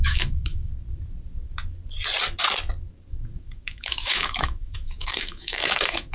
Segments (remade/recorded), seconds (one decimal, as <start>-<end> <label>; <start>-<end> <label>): 0.0-0.7 remade; 0.7-3.4 recorded; 3.4-6.1 remade